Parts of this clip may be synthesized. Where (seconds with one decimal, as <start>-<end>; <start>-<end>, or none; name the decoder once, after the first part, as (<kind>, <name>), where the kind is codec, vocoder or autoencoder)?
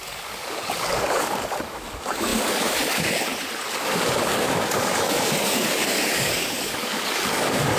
0.0-3.3 (codec, DAC); 3.8-7.8